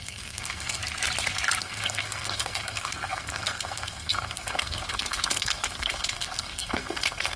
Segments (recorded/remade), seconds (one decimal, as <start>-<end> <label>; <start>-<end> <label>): 0.0-0.8 remade; 0.8-1.6 recorded; 1.6-7.4 remade